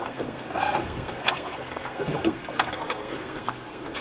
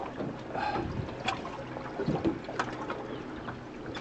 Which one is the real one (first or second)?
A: second